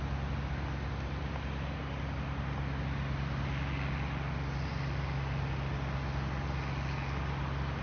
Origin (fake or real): real